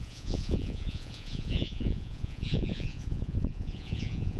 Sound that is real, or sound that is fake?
fake